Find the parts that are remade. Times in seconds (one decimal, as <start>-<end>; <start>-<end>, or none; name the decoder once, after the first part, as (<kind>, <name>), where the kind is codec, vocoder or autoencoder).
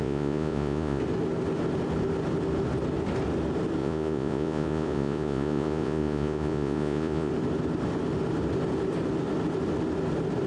0.0-1.0 (vocoder, Vocos); 3.8-7.3